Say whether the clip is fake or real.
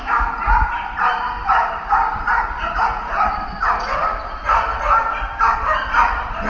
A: real